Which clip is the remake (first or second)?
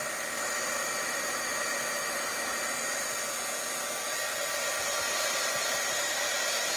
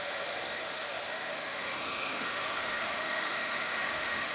second